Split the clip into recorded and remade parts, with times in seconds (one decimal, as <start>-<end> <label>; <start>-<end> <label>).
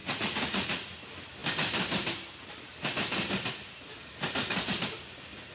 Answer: 0.0-0.9 remade; 0.9-5.5 recorded